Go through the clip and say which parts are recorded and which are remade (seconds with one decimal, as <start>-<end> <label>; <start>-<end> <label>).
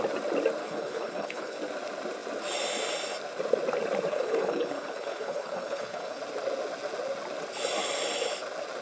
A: 0.0-0.6 recorded; 0.6-1.6 remade; 1.6-4.1 recorded; 4.1-6.2 remade; 6.2-8.8 recorded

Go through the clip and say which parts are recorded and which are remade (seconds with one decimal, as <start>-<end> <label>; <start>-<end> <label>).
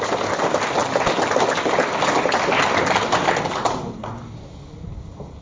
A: 0.0-5.4 recorded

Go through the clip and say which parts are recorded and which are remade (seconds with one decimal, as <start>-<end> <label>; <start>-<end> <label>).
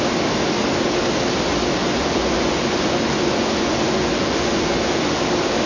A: 0.0-1.8 recorded; 1.8-5.2 remade; 5.2-5.7 recorded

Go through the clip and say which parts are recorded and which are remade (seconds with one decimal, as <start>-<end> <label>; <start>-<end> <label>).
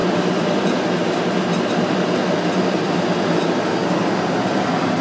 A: 0.0-3.0 remade; 3.0-3.8 recorded; 3.8-5.0 remade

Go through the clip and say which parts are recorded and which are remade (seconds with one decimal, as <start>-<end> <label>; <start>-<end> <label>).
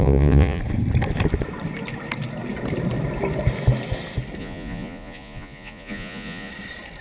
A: 0.0-0.6 remade; 0.6-4.4 recorded; 4.4-6.5 remade; 6.5-7.0 recorded